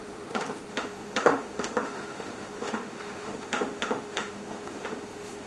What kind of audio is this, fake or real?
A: fake